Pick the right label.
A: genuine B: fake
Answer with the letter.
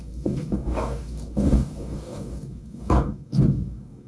B